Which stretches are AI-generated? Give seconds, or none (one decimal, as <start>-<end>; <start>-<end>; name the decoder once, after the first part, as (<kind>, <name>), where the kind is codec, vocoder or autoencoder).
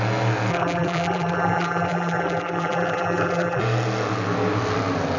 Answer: 0.5-3.6 (vocoder, BigVGAN v2)